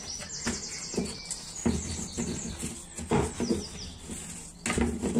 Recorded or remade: recorded